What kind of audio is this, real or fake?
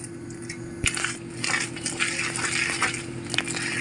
real